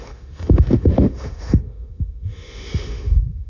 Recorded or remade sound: remade